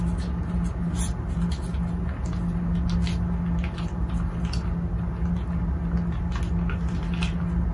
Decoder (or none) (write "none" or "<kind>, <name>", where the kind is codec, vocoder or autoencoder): none